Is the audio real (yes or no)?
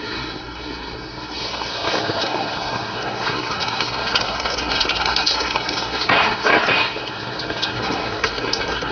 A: no